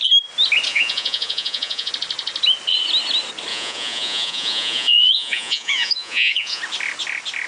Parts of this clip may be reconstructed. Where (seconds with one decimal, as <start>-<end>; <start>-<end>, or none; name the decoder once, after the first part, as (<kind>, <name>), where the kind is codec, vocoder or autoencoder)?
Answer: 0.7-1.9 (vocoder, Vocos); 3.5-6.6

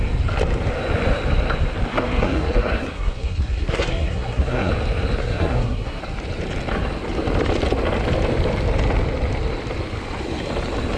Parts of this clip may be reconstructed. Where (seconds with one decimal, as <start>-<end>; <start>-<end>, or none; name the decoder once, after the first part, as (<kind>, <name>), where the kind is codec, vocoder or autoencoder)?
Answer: 1.9-4.7 (codec, SNAC); 5.2-6.0

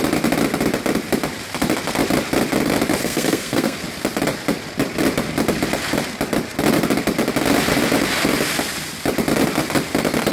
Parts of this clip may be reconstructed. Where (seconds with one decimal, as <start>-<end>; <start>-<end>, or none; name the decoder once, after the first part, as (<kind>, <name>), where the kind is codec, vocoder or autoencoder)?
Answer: 3.0-3.8 (codec, SNAC)

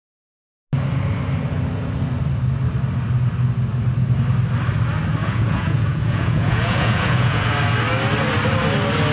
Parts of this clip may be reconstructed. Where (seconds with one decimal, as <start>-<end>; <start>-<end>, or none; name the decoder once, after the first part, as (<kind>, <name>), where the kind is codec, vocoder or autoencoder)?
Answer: 5.2-7.5 (vocoder, Vocos)

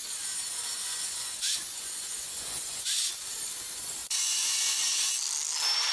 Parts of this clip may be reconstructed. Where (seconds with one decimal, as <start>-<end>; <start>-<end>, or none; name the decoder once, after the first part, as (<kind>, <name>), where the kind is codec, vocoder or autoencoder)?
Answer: 0.7-3.3 (vocoder, Vocos); 4.0-5.1